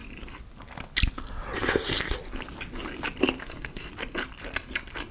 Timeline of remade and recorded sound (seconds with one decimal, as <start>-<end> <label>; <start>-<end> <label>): 0.0-3.4 recorded; 3.4-3.9 remade; 3.9-5.1 recorded